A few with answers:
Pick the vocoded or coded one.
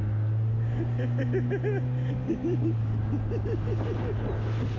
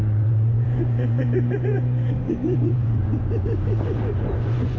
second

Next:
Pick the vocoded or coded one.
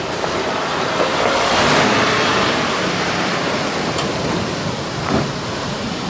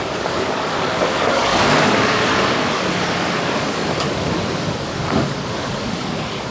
second